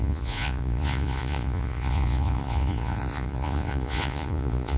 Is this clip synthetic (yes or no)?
yes